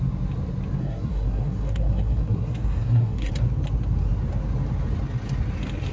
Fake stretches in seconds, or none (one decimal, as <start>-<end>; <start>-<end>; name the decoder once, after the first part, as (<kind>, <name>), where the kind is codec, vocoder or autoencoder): 0.8-3.3 (codec, SNAC)